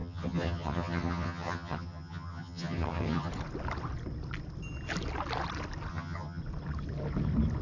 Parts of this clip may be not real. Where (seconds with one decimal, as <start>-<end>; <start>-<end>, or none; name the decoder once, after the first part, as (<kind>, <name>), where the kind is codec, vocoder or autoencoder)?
0.0-3.3 (vocoder, HiFi-GAN); 5.9-6.4

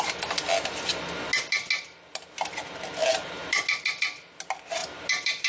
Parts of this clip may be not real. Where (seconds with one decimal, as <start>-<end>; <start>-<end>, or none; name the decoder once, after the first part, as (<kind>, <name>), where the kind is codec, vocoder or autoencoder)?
none

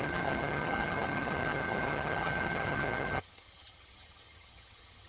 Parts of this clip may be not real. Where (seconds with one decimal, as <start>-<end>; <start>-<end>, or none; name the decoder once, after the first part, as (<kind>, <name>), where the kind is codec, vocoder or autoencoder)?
0.0-5.1 (vocoder, HiFi-GAN)

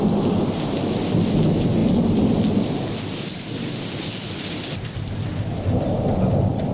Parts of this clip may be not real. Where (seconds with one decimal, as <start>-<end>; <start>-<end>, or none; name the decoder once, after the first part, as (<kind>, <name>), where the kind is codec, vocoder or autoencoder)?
none

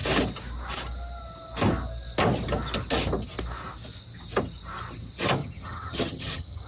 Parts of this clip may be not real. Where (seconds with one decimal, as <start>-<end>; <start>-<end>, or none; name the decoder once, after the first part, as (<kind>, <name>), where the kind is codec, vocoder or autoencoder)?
5.4-6.7 (vocoder, HiFi-GAN)

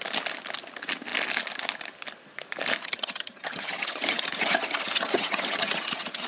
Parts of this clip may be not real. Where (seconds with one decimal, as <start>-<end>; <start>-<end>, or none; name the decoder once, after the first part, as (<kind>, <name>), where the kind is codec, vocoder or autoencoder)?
2.8-6.3 (vocoder, HiFi-GAN)